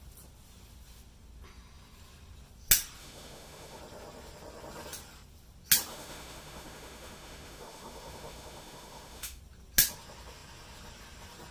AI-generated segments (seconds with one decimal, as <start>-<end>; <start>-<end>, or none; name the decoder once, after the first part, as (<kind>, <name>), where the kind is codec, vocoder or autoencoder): 3.0-3.8 (autoencoder, DAC-VAE); 5.9-9.4